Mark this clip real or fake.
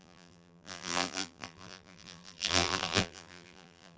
fake